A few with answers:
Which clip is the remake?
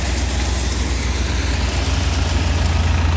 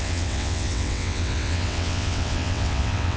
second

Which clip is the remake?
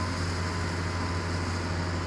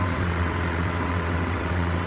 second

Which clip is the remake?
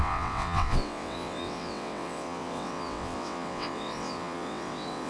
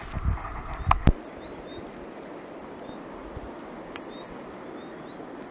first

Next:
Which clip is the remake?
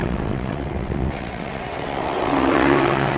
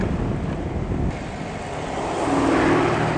first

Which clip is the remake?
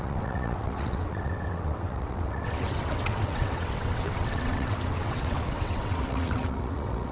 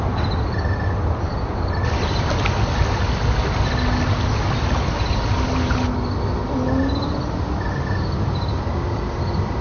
first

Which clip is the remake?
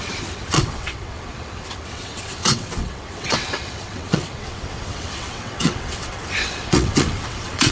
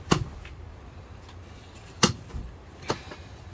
first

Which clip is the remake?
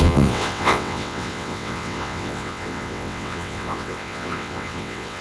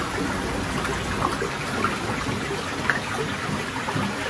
first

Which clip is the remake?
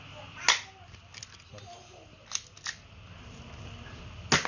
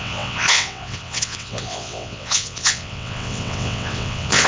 second